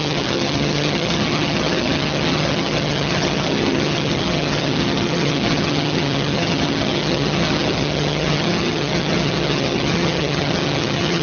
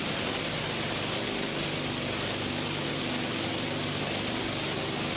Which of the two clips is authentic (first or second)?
second